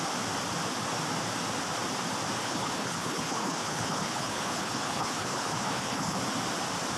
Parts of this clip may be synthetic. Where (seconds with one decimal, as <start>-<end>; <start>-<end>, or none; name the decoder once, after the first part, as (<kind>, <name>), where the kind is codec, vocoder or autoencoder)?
2.4-6.2 (codec, HILCodec)